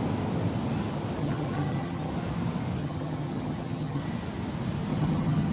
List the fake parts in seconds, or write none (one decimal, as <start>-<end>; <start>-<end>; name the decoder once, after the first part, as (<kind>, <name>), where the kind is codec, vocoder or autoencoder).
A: 1.2-2.1 (vocoder, HiFi-GAN); 2.8-4.0; 4.9-5.5

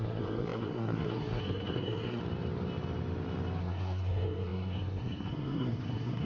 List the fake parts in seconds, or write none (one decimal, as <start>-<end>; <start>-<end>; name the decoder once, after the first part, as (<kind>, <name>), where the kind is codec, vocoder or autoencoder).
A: 0.0-2.2 (codec, SNAC); 3.6-6.3

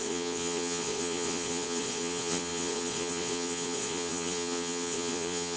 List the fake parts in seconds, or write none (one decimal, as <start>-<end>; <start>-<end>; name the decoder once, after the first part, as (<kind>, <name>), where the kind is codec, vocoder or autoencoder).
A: 0.0-5.6 (vocoder, Vocos)

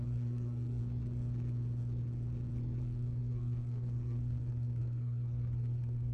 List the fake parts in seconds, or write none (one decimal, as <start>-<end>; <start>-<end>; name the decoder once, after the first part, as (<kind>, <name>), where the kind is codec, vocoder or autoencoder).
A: 0.0-0.8 (codec, SNAC); 2.8-6.1

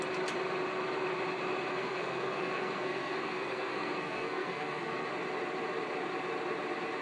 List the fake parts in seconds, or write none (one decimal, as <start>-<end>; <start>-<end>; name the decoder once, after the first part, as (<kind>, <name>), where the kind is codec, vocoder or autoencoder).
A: 1.7-5.1 (codec, SNAC)